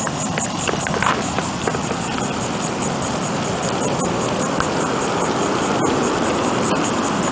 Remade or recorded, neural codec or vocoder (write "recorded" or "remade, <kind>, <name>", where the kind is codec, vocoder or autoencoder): recorded